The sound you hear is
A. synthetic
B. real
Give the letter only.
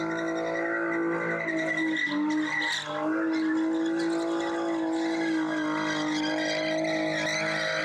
B